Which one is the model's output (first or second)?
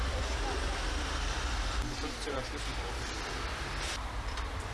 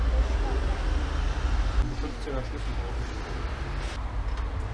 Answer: first